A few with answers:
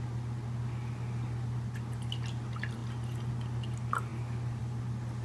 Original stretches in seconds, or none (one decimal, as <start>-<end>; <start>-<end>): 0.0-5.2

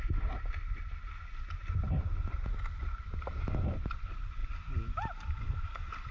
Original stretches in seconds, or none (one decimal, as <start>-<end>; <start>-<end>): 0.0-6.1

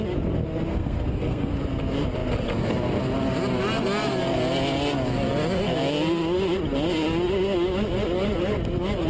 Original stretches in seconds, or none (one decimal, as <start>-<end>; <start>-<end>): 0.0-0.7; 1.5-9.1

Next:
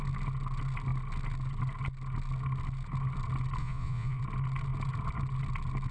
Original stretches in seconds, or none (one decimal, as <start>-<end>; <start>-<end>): 0.0-3.6; 4.2-5.9